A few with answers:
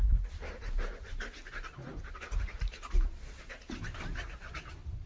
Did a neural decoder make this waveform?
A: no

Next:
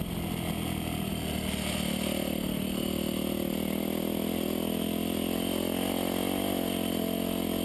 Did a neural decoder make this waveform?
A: no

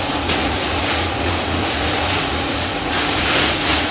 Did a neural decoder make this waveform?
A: yes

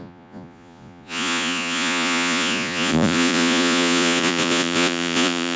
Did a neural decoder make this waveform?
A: yes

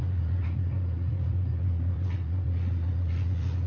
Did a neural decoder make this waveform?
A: yes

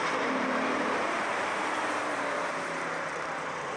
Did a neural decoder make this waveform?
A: yes